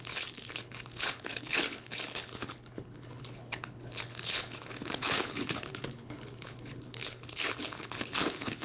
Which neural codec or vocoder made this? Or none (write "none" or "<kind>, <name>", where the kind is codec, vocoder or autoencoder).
codec, HILCodec